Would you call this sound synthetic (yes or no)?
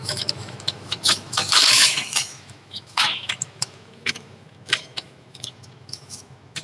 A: yes